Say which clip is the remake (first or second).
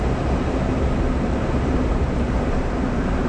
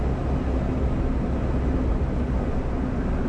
first